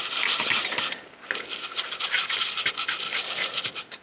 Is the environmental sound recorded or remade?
recorded